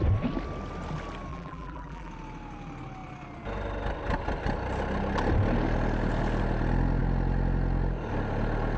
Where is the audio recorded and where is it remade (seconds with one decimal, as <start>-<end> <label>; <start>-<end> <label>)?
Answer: 0.0-1.3 recorded; 1.3-2.1 remade; 2.1-8.8 recorded